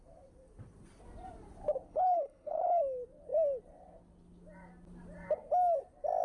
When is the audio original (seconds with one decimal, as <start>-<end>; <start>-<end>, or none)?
0.0-1.9; 2.8-6.2